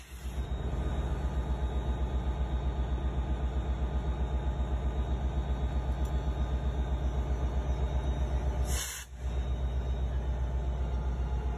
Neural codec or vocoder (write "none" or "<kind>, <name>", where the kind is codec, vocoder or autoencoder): none